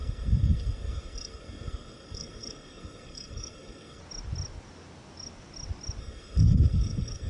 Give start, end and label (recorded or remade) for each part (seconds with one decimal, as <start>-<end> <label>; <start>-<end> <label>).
0.0-4.0 remade; 4.0-6.0 recorded; 6.0-7.3 remade